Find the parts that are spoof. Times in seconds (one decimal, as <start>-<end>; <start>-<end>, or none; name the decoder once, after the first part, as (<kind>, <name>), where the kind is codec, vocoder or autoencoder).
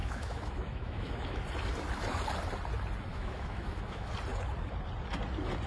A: 0.0-1.4 (autoencoder, DAC-VAE); 3.1-4.1